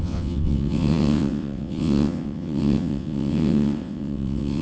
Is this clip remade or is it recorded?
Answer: remade